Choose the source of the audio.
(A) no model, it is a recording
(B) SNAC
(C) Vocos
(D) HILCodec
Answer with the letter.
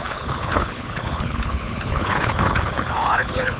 D